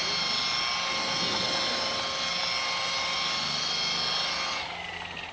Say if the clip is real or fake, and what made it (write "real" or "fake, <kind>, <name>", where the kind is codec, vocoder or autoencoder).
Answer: real